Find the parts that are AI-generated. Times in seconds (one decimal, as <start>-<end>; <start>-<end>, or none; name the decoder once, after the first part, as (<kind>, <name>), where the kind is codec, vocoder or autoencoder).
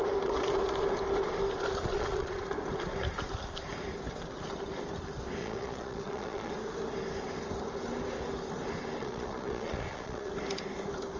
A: 1.9-2.4 (vocoder, Vocos); 5.4-6.5; 9.0-10.3